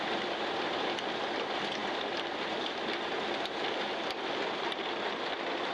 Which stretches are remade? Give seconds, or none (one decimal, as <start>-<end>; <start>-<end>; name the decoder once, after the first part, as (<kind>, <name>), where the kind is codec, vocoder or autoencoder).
none